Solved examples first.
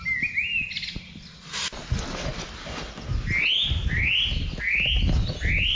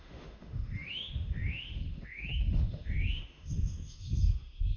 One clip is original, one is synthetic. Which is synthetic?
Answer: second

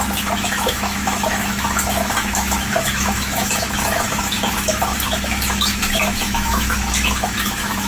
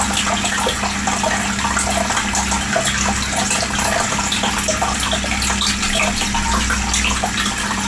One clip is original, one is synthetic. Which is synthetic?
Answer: first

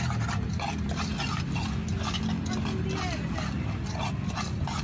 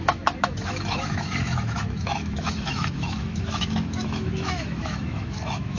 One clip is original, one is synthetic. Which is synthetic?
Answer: second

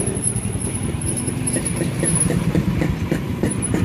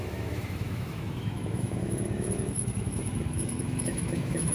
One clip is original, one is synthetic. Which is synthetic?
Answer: second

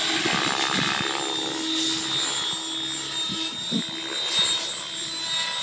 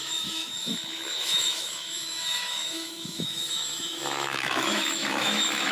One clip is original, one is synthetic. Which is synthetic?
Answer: second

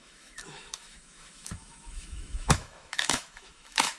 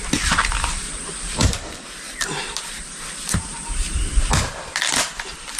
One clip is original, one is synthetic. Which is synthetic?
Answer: first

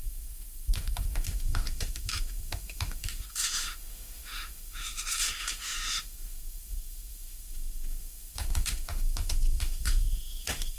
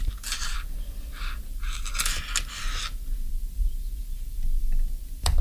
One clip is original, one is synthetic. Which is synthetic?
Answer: first